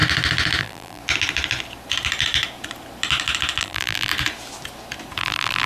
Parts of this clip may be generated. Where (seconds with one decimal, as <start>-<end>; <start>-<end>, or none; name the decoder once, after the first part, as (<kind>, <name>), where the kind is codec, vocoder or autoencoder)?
0.6-1.0 (vocoder, BigVGAN v2); 3.6-4.1; 5.2-5.7